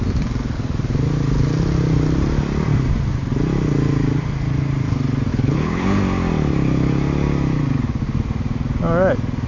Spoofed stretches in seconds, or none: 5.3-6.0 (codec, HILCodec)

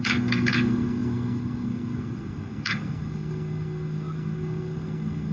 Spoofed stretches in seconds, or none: 0.0-5.3 (codec, SNAC)

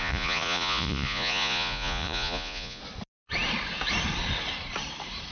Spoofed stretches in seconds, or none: 0.0-2.8 (vocoder, Vocos)

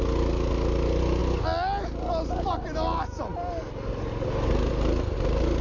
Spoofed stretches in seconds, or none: none

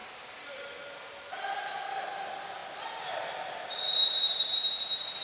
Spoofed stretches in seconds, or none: none